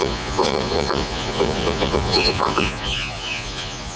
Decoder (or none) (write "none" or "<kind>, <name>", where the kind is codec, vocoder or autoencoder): vocoder, Vocos